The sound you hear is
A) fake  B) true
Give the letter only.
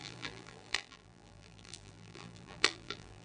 A